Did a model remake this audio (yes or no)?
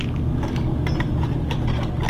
no